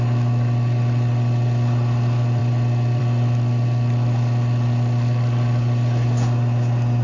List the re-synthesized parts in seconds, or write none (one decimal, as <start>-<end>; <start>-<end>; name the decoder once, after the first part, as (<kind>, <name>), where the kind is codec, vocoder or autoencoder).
none